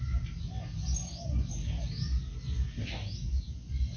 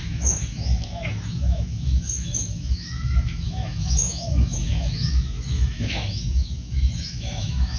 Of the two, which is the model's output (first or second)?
second